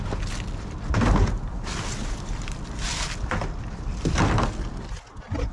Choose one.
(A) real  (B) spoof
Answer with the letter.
A